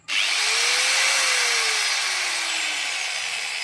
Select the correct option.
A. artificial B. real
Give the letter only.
B